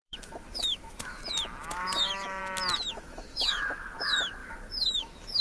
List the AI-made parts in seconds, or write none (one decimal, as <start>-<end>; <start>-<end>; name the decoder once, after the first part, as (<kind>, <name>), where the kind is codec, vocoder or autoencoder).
0.0-1.2 (autoencoder, DAC-VAE); 1.7-2.4; 2.9-5.4